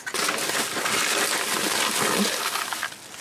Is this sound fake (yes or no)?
no